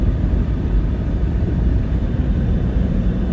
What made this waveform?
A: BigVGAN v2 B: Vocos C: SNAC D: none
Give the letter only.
A